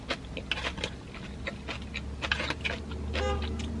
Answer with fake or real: real